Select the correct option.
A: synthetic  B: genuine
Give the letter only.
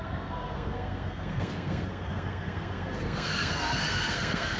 A